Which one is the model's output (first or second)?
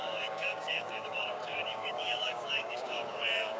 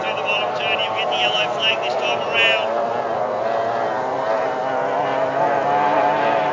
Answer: first